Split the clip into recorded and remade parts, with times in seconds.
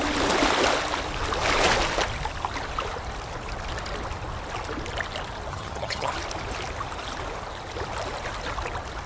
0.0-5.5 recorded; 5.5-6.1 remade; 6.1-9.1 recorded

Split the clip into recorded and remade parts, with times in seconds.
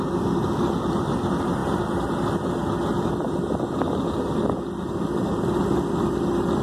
0.0-6.6 recorded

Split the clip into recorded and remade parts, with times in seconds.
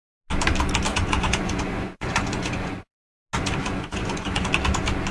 0.0-0.9 recorded; 0.9-3.1 remade; 3.1-3.6 recorded; 3.6-4.5 remade; 4.5-5.1 recorded